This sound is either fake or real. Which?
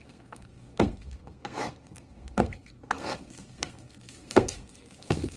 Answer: fake